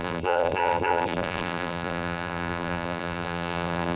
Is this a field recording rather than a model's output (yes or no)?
no